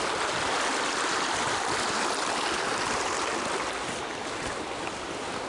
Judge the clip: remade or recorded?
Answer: recorded